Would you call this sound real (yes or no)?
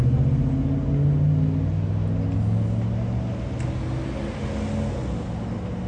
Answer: yes